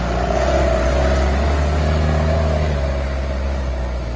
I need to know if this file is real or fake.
real